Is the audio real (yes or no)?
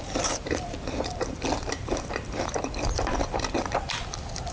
no